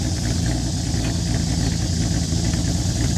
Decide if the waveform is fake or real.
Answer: real